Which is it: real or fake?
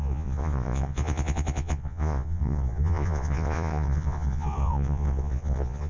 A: fake